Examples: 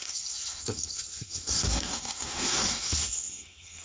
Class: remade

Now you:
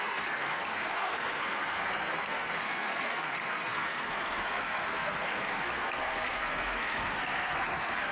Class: remade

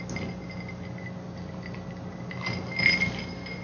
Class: recorded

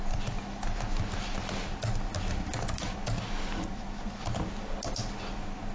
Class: recorded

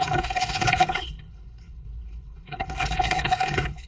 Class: remade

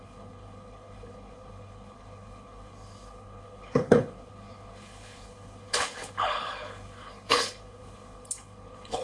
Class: remade